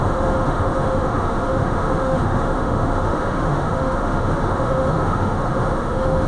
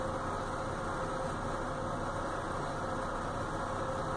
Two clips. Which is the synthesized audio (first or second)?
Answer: first